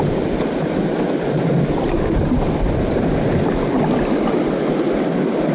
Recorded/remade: recorded